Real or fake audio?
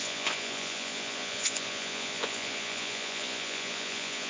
fake